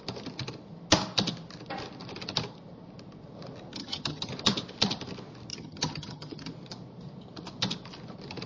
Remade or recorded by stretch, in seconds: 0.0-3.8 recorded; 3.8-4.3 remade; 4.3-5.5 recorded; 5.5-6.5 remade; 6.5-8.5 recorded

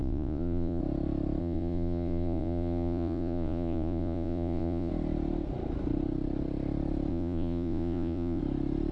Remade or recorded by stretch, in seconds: 0.0-0.8 remade; 0.8-1.4 recorded; 1.4-4.9 remade; 4.9-7.1 recorded; 7.1-8.4 remade; 8.4-8.9 recorded

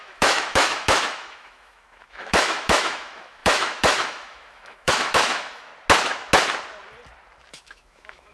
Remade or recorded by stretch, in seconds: 0.0-5.7 remade; 5.7-7.5 recorded; 7.5-8.3 remade

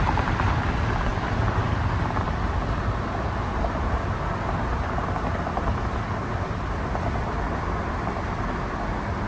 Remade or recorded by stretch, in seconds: 0.0-9.3 recorded

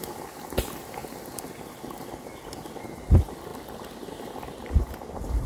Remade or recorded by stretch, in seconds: 0.0-5.5 recorded

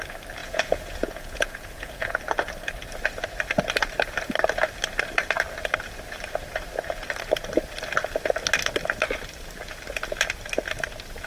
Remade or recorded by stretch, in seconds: 0.0-0.4 recorded; 0.4-2.1 remade; 2.1-11.3 recorded

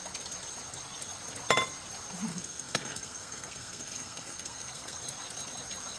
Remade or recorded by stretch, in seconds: 0.0-2.3 recorded; 2.3-5.0 remade; 5.0-6.0 recorded